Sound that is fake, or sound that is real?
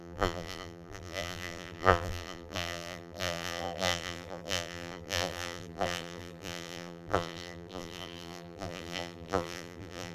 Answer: fake